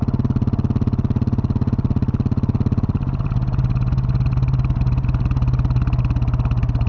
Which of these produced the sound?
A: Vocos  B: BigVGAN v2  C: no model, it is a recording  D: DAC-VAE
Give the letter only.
C